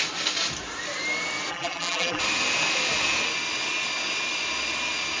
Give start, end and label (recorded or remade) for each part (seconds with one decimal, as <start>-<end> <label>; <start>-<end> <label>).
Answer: 0.0-1.5 recorded; 1.5-2.2 remade; 2.2-5.2 recorded